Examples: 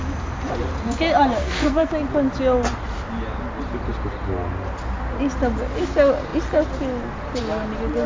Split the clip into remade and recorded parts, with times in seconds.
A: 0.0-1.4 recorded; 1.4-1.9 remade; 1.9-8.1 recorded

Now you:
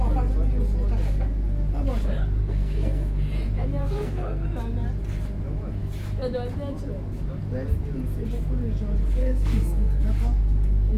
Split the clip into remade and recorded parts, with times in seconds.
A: 0.0-2.4 recorded; 2.4-3.2 remade; 3.2-3.8 recorded; 3.8-4.5 remade; 4.5-9.2 recorded; 9.2-10.0 remade; 10.0-11.0 recorded